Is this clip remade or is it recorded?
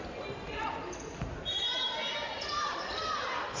recorded